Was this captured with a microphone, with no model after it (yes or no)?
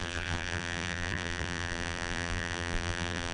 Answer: no